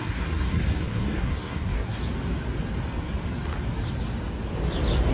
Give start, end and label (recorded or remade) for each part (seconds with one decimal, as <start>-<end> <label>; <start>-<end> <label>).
0.0-2.0 remade; 2.0-5.1 recorded